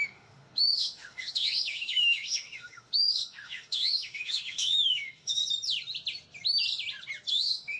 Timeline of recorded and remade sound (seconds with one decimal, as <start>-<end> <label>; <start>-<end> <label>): 0.0-5.4 remade; 5.4-7.3 recorded; 7.3-7.8 remade